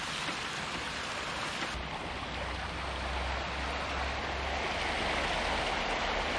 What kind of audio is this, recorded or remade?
recorded